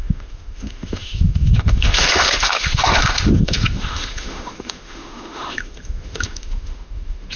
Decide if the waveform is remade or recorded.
remade